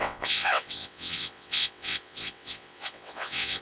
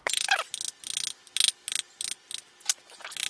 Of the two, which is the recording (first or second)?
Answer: second